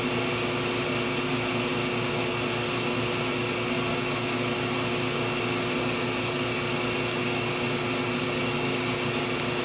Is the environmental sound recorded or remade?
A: recorded